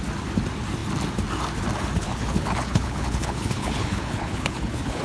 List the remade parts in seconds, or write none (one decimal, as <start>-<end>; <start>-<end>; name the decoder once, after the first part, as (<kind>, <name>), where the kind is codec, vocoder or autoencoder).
2.0-5.0 (codec, HILCodec)